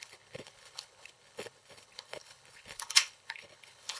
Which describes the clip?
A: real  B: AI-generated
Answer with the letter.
B